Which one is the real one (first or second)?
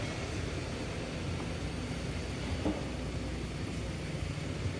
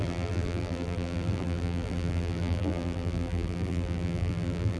first